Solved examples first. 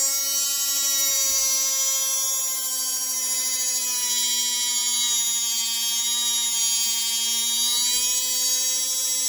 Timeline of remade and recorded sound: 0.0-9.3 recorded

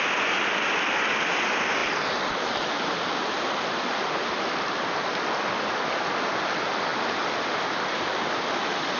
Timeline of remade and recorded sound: 0.0-9.0 recorded

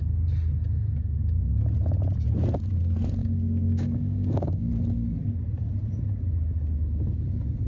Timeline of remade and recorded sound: 0.0-3.2 recorded; 3.2-4.7 remade; 4.7-7.7 recorded

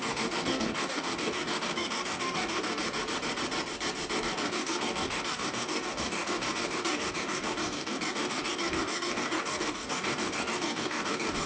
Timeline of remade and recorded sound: 0.0-2.8 remade; 2.8-4.2 recorded; 4.2-11.5 remade

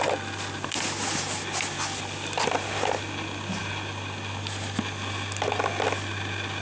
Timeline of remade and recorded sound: 0.0-6.6 recorded

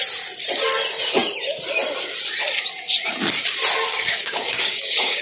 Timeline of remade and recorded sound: 0.0-3.9 recorded; 3.9-5.2 remade

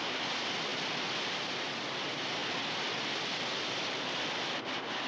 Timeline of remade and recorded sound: 0.0-5.1 recorded

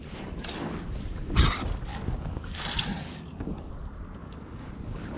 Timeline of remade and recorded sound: 0.0-1.9 recorded; 1.9-2.6 remade; 2.6-3.0 recorded; 3.0-3.7 remade; 3.7-4.2 recorded; 4.2-4.7 remade; 4.7-5.2 recorded